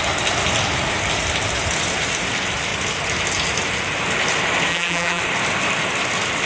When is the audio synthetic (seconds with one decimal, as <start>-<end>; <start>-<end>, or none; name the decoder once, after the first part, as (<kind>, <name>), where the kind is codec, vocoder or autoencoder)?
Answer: 4.7-5.2 (vocoder, BigVGAN v2)